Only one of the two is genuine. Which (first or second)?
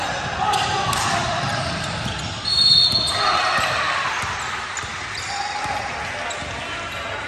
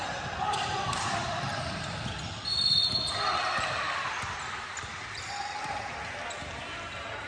first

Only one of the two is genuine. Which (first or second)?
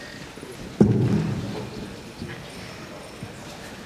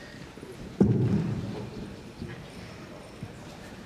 first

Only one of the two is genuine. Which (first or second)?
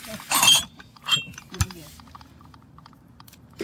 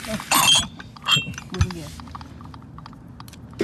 second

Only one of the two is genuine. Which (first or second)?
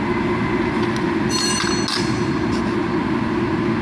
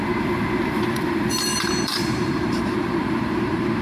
first